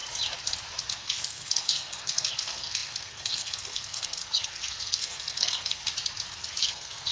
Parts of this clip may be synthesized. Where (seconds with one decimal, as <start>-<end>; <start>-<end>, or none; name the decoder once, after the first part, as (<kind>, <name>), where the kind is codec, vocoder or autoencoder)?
0.9-5.8 (codec, SNAC); 6.6-7.1